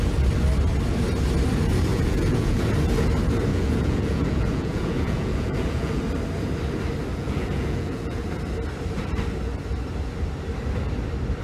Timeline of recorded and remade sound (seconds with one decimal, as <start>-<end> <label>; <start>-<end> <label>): 0.0-1.9 recorded; 1.9-2.6 remade; 2.6-3.5 recorded; 3.5-6.0 remade; 6.0-7.1 recorded; 7.1-8.2 remade; 8.2-11.4 recorded